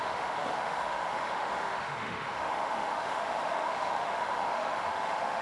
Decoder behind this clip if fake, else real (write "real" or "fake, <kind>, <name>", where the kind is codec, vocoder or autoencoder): fake, autoencoder, DAC-VAE